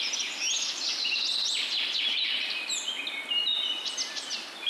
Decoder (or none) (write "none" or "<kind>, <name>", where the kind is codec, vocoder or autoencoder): none